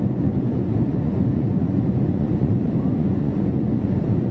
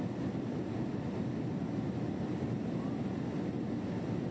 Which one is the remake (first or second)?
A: first